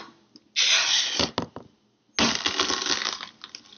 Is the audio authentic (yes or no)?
yes